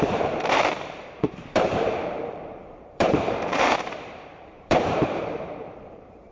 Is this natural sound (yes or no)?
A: no